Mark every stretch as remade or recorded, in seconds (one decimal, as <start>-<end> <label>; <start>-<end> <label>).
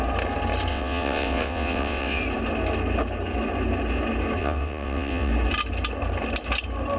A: 0.0-0.7 recorded; 0.7-2.2 remade; 2.2-4.4 recorded; 4.4-5.3 remade; 5.3-7.0 recorded